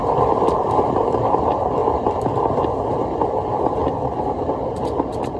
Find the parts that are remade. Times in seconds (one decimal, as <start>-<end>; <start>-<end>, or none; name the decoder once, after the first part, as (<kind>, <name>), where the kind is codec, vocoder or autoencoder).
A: none